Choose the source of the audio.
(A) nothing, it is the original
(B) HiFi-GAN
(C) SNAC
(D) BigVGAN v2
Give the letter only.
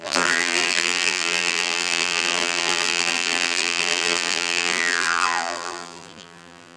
D